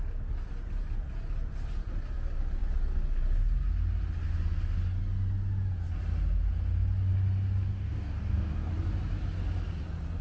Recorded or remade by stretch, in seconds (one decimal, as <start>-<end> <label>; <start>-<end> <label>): 0.0-7.7 recorded; 7.7-8.7 remade; 8.7-10.2 recorded